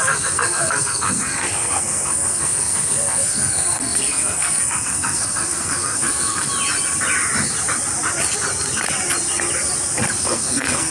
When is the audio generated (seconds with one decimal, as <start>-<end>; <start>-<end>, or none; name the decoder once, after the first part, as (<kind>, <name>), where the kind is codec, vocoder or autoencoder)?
0.0-6.5 (codec, SNAC); 10.2-10.9